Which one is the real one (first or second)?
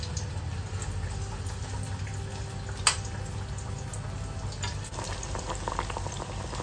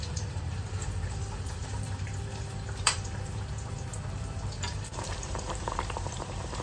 first